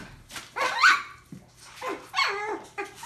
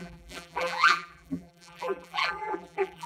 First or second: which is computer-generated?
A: second